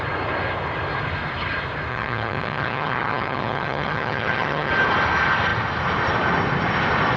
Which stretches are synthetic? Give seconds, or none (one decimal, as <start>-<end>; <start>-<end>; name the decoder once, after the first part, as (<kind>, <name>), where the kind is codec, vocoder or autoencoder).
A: 1.9-4.7 (vocoder, HiFi-GAN)